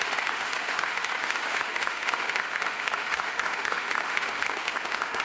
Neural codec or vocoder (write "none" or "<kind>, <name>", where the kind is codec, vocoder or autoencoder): autoencoder, DAC-VAE